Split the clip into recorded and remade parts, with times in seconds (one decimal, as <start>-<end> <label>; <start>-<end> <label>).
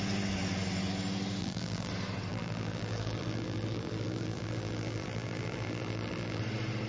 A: 0.0-1.4 recorded; 1.4-1.9 remade; 1.9-2.3 recorded; 2.3-6.4 remade; 6.4-6.9 recorded